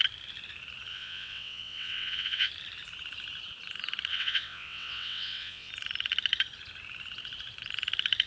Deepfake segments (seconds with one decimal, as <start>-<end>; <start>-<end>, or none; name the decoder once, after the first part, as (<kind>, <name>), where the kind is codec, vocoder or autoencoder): 0.9-2.5 (vocoder, WaveNeXt); 4.1-5.7